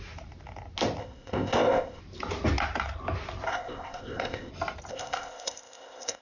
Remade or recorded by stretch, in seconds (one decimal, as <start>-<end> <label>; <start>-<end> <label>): 0.0-1.0 recorded; 1.0-2.0 remade; 2.0-3.5 recorded; 3.5-4.5 remade; 4.5-4.9 recorded; 4.9-6.2 remade